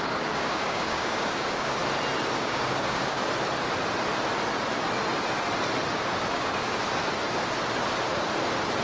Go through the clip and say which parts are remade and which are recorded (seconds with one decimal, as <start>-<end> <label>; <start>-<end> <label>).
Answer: 0.0-1.8 remade; 1.8-2.4 recorded; 2.4-3.2 remade; 3.2-6.3 recorded; 6.3-6.8 remade; 6.8-8.8 recorded